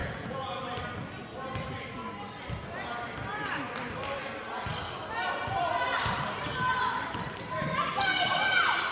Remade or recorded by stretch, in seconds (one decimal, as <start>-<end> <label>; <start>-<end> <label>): 0.0-0.6 remade; 0.6-8.9 recorded